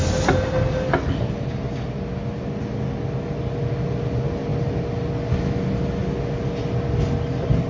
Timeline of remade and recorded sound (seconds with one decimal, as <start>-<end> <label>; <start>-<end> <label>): 0.0-7.7 recorded